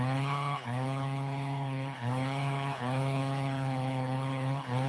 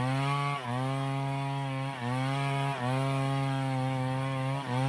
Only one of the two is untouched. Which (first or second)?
second